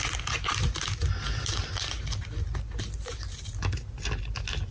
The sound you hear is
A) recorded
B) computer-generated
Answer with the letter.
A